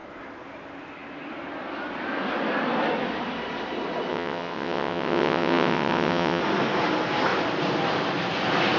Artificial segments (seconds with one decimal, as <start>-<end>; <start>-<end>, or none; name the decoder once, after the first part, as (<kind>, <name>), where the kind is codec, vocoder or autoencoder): 4.1-6.4 (vocoder, WaveNeXt)